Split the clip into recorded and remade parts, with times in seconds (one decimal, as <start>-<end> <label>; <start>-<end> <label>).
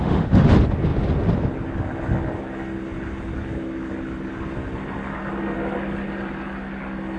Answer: 0.0-0.5 remade; 0.5-7.2 recorded